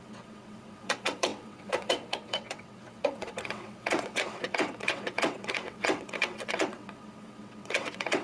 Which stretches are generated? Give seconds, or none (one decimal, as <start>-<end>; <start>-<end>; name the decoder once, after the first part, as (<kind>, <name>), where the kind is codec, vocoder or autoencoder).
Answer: 0.0-8.2 (vocoder, WaveNeXt)